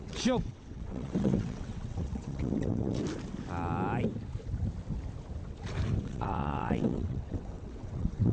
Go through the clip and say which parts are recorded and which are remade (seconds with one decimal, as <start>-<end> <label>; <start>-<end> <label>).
0.0-3.0 remade; 3.0-6.0 recorded; 6.0-8.3 remade